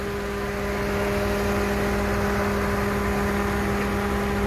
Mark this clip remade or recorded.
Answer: recorded